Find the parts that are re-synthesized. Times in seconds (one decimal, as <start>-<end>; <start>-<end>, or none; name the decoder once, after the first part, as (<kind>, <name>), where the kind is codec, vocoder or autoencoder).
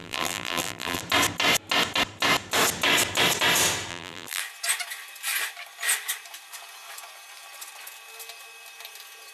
0.0-1.0 (vocoder, BigVGAN v2); 3.9-4.4